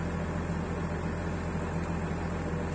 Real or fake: real